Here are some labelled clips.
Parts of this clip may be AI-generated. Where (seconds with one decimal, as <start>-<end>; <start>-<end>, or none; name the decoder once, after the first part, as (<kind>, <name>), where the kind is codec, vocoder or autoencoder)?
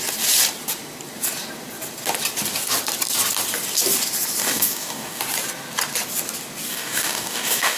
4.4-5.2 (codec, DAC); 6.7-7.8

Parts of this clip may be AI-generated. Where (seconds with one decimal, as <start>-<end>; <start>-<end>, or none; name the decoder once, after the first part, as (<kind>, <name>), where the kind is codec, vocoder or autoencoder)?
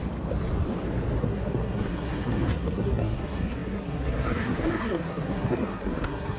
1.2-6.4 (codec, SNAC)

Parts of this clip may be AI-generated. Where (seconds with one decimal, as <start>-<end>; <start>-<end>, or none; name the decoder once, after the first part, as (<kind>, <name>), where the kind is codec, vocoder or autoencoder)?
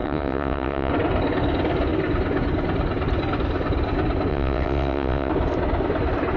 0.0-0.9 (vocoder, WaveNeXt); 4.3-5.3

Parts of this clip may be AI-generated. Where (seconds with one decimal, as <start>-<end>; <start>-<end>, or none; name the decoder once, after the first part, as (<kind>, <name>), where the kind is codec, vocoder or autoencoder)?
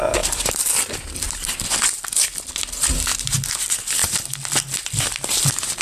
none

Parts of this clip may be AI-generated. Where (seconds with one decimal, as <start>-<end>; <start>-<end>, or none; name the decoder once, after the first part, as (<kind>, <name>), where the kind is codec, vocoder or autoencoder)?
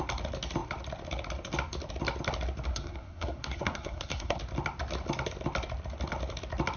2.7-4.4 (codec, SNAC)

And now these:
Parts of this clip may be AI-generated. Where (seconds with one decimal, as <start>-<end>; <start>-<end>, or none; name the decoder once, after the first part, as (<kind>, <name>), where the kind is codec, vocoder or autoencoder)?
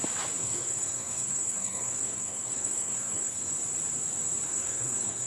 0.4-3.5 (codec, SNAC); 4.5-5.3